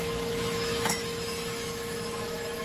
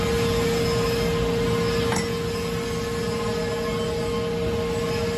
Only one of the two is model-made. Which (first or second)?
first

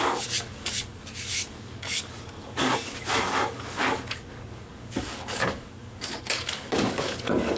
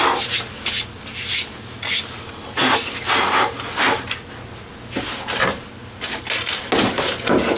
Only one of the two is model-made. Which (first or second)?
first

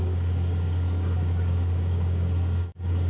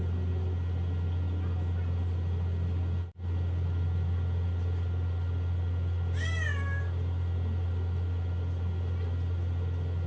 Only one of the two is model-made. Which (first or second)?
first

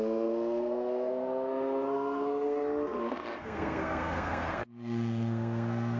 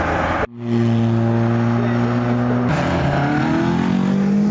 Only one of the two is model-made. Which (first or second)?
first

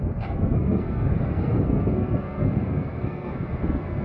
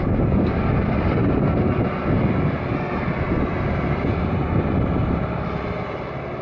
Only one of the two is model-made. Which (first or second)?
first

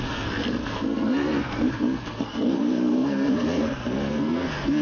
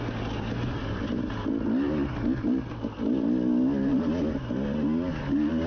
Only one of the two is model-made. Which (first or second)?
first